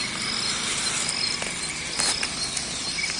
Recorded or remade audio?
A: recorded